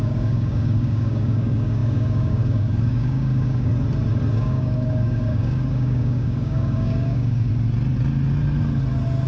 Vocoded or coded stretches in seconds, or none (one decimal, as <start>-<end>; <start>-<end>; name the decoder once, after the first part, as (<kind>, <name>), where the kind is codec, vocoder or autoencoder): 0.0-3.7 (codec, DAC); 4.3-7.5